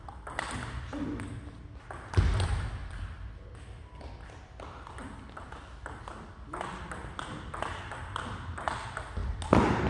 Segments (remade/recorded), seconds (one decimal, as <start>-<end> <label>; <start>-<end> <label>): 0.0-9.9 recorded